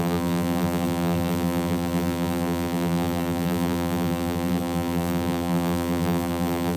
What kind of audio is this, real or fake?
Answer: fake